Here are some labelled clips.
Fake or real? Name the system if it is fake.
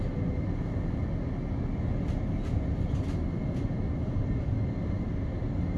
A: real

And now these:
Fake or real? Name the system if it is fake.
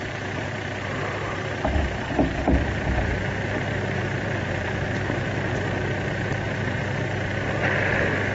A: fake, vocoder, BigVGAN v2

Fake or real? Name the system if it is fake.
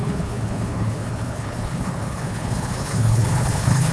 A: fake, codec, HILCodec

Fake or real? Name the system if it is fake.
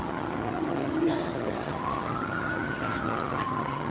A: fake, vocoder, HiFi-GAN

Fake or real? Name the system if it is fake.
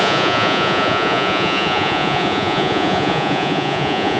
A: fake, vocoder, Vocos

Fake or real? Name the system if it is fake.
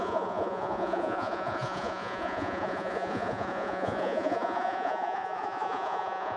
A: fake, vocoder, Vocos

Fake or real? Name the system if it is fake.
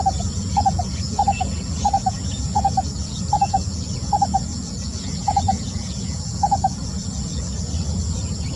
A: fake, vocoder, Vocos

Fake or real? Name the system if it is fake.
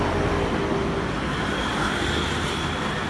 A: real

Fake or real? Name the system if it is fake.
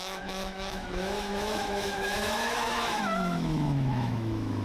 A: fake, autoencoder, DAC-VAE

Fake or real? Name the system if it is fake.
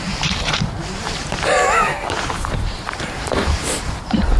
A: fake, vocoder, BigVGAN v2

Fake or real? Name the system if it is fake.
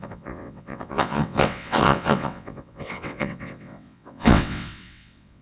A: fake, vocoder, WaveNeXt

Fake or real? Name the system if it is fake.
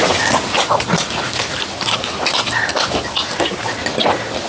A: real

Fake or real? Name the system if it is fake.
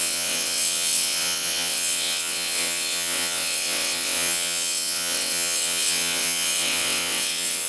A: fake, vocoder, WaveNeXt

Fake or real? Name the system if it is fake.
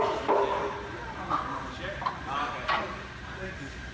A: real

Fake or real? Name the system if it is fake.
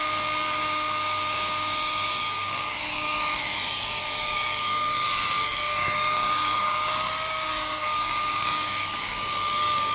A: fake, codec, DAC